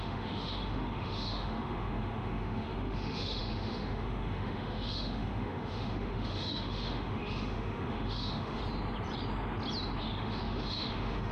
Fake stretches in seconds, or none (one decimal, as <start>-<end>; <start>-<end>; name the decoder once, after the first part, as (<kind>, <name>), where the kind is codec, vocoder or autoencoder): 0.0-8.6 (autoencoder, DAC-VAE); 10.0-11.3